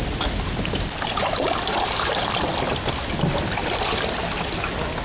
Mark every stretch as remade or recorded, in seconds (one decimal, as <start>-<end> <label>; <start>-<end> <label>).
0.0-5.0 recorded